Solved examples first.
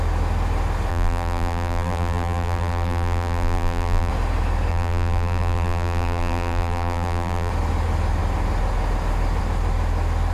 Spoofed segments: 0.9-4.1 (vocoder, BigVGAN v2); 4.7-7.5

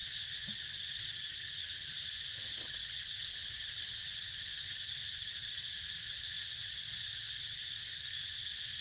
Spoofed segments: none